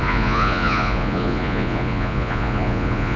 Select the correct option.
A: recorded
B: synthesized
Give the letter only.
B